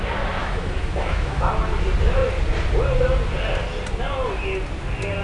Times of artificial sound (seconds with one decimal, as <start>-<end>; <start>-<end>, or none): 0.4-1.5